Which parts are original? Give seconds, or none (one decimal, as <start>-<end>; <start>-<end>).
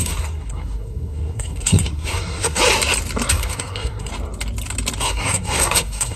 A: 2.6-3.3; 4.1-5.0